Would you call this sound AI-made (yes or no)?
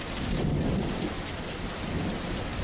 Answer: yes